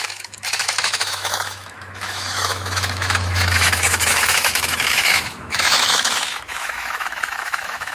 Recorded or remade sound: remade